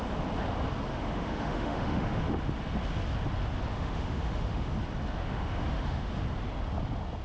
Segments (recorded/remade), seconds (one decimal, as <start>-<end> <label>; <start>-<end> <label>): 0.0-0.9 recorded; 0.9-2.2 remade; 2.2-3.7 recorded; 3.7-4.7 remade; 4.7-5.2 recorded; 5.2-6.2 remade; 6.2-7.2 recorded